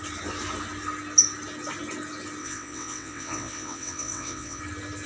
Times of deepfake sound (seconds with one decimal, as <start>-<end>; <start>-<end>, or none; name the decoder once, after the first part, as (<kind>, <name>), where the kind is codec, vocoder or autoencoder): 2.4-4.6 (vocoder, WaveNeXt)